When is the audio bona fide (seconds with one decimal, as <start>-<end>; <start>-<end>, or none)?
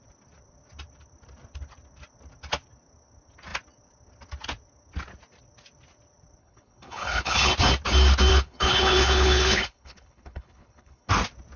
0.0-6.4; 7.5-8.3; 11.1-11.6